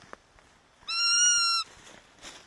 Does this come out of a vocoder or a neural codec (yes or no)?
no